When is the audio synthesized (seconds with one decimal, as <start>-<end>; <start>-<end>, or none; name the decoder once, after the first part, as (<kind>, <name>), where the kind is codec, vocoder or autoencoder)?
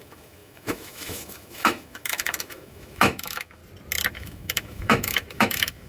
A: 0.0-3.6 (autoencoder, DAC-VAE); 4.1-5.9